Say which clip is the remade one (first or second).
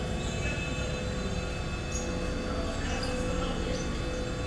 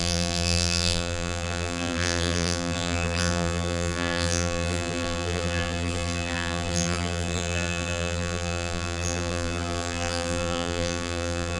second